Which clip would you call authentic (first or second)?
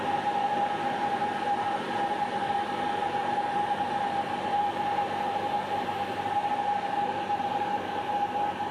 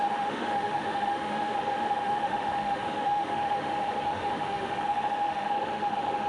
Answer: first